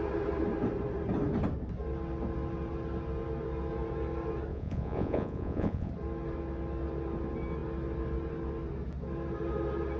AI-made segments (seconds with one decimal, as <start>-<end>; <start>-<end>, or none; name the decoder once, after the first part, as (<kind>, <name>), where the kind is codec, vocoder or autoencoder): 4.5-5.9 (vocoder, Vocos)